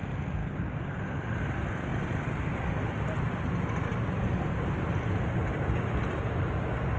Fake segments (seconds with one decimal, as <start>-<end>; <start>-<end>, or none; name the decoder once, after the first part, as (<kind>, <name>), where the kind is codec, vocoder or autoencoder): 0.4-1.0 (codec, DAC)